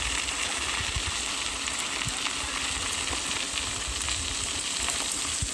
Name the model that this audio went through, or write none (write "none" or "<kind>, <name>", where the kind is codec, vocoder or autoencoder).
none